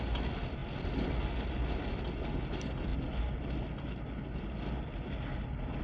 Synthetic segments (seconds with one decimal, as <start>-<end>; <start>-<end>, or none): none